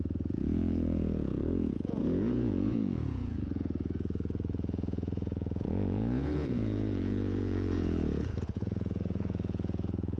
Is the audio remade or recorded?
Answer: remade